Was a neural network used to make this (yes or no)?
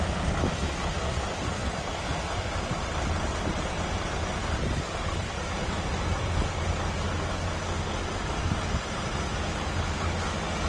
no